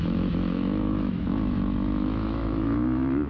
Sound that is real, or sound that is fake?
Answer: fake